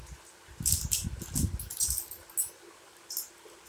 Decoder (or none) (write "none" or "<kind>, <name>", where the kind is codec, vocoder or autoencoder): none